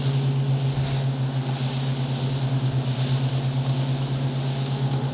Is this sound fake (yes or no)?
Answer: no